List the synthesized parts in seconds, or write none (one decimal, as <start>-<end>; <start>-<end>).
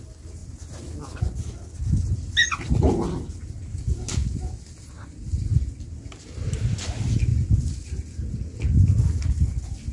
none